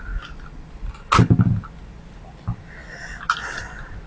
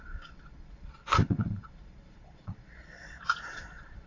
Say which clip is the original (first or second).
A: first